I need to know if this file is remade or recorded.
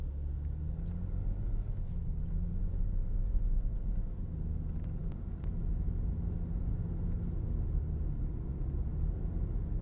recorded